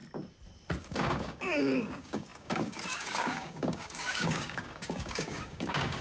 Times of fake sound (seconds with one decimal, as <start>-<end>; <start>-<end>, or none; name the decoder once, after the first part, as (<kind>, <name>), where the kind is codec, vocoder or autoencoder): 0.8-6.0 (codec, DAC)